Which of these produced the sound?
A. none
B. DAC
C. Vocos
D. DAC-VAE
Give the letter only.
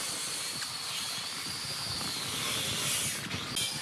A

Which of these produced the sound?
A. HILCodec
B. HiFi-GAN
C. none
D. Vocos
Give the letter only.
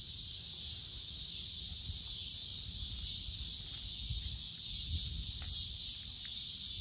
C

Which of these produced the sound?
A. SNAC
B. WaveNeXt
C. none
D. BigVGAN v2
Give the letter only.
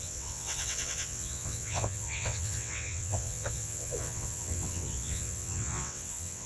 B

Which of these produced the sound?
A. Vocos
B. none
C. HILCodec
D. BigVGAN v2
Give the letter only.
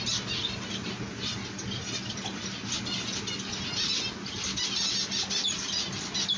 B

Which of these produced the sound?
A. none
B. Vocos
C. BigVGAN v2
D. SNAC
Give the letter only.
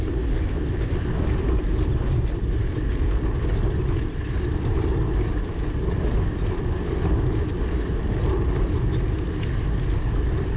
A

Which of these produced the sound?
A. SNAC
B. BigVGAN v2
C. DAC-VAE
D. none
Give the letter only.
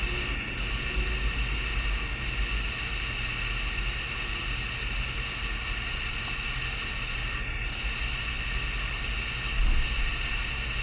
D